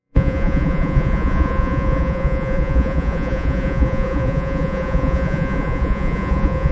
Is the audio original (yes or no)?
no